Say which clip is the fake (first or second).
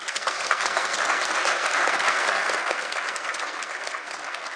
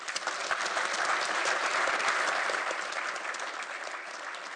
first